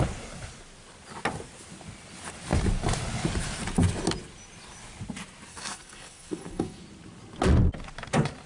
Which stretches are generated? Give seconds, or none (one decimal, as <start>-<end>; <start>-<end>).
5.5-6.8